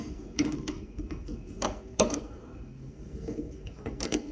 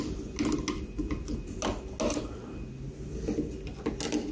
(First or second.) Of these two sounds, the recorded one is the second